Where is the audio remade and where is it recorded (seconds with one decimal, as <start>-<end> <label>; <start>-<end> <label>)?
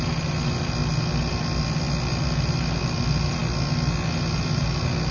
0.0-5.1 recorded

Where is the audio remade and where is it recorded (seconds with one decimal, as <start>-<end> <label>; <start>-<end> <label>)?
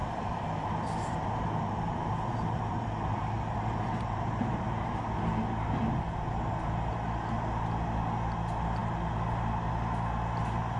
0.0-5.0 remade; 5.0-10.8 recorded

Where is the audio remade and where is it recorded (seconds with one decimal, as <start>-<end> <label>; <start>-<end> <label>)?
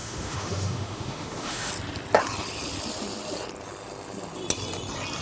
0.0-1.7 remade; 1.7-5.2 recorded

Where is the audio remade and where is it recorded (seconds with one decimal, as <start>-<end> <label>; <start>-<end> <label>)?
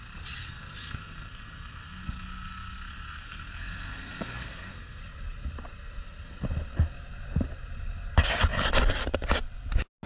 0.0-0.4 recorded; 0.4-5.0 remade; 5.0-10.1 recorded